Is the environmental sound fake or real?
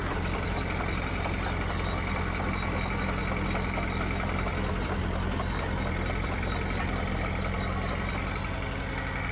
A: real